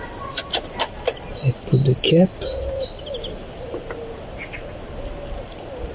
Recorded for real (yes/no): yes